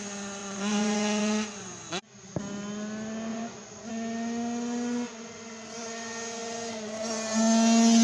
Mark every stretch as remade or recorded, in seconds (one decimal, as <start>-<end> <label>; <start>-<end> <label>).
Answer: 0.0-0.4 recorded; 0.4-2.4 remade; 2.4-3.3 recorded; 3.3-3.9 remade; 3.9-8.0 recorded